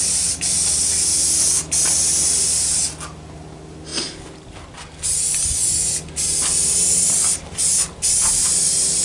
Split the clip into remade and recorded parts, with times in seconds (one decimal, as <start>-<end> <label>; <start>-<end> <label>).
0.0-9.0 recorded